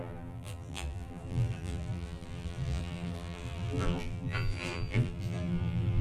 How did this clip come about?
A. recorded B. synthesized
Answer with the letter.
B